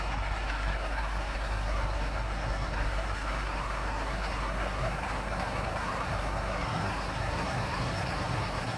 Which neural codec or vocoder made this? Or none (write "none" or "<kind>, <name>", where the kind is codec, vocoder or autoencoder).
codec, SNAC